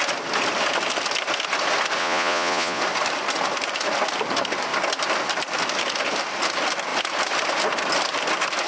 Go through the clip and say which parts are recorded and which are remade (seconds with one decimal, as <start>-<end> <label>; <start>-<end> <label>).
0.0-2.0 recorded; 2.0-2.8 remade; 2.8-8.7 recorded